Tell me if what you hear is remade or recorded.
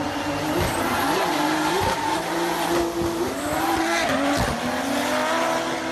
recorded